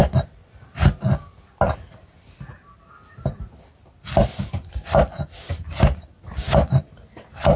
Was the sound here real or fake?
real